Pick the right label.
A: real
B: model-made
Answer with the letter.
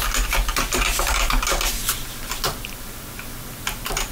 A